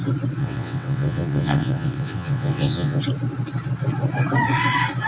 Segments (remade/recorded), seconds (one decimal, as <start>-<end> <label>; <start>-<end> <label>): 0.0-0.4 recorded; 0.4-3.0 remade; 3.0-5.1 recorded